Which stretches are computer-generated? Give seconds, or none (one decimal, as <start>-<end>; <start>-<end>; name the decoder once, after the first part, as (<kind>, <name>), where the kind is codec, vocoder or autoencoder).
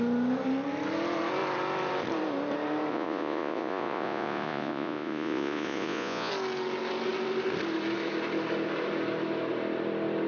2.9-6.3 (vocoder, Vocos)